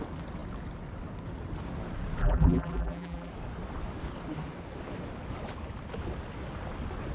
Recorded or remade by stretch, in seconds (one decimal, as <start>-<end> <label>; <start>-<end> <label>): 0.0-2.2 recorded; 2.2-3.3 remade; 3.3-7.1 recorded